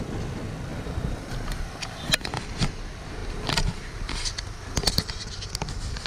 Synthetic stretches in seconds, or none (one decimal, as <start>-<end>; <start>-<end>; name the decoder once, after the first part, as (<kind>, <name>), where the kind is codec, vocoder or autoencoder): 0.7-2.4 (vocoder, BigVGAN v2); 3.2-5.5